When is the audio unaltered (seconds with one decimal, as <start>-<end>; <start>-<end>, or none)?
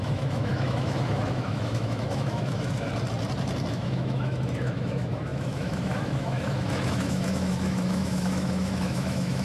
2.9-3.7